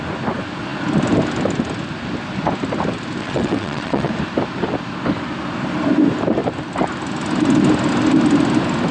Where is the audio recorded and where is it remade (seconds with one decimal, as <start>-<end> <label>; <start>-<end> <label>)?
0.0-3.2 recorded; 3.2-4.1 remade; 4.1-8.9 recorded

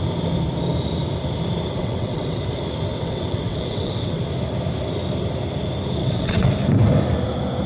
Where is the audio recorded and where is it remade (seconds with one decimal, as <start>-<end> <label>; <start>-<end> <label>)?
0.0-1.8 recorded; 1.8-2.4 remade; 2.4-2.9 recorded; 2.9-4.2 remade; 4.2-6.0 recorded; 6.0-6.5 remade; 6.5-7.7 recorded

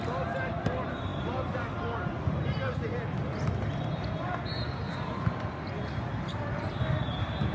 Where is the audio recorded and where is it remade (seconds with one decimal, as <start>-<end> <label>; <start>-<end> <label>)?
0.0-7.5 recorded

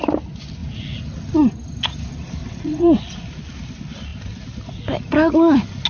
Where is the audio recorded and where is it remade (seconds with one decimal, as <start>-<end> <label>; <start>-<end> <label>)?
0.0-2.4 recorded; 2.4-3.0 remade; 3.0-5.9 recorded

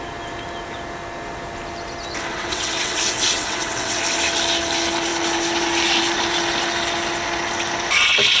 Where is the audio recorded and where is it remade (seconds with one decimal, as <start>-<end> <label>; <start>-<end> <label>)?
0.0-2.3 recorded; 2.3-4.0 remade; 4.0-8.4 recorded

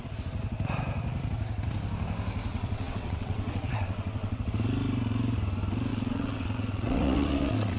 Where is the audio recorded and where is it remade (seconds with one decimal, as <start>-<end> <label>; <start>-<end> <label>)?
0.0-2.5 recorded; 2.5-4.4 remade; 4.4-5.9 recorded; 5.9-7.8 remade

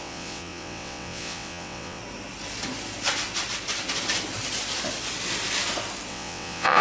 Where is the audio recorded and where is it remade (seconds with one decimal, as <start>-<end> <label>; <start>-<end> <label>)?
0.0-2.0 remade; 2.0-6.1 recorded; 6.1-6.8 remade

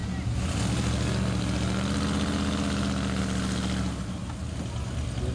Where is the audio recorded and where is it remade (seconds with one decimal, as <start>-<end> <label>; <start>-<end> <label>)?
0.0-5.3 recorded